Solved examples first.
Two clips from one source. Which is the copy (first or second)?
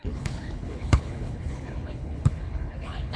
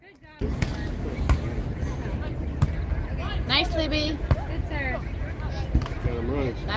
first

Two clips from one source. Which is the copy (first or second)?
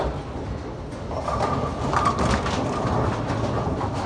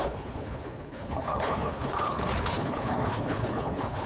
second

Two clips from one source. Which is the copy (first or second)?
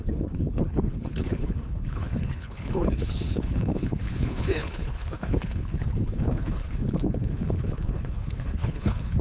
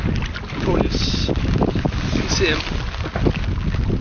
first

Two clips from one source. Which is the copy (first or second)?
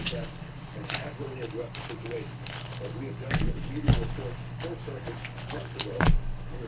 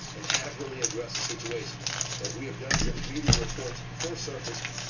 first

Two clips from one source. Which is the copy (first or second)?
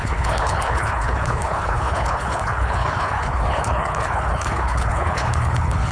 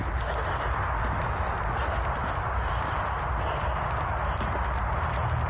first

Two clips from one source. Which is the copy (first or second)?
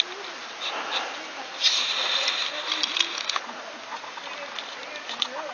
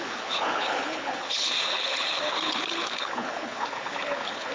second